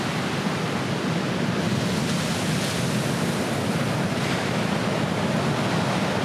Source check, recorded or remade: recorded